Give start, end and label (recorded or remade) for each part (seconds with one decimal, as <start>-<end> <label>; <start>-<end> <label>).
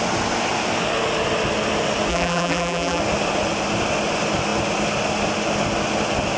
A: 0.0-2.1 recorded; 2.1-3.0 remade; 3.0-6.4 recorded